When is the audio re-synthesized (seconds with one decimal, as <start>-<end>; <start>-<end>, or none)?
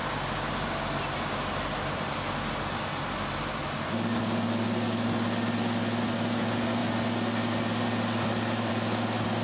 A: none